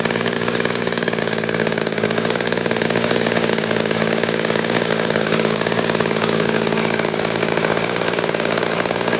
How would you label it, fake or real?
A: fake